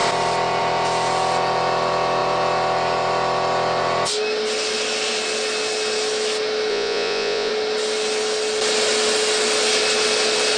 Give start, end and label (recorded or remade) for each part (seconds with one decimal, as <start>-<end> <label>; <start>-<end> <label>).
0.0-6.7 recorded; 6.7-7.5 remade; 7.5-10.6 recorded